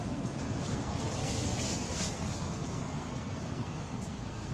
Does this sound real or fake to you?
fake